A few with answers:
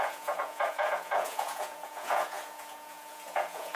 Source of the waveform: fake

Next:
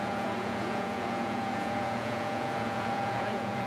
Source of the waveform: fake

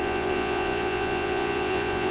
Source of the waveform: fake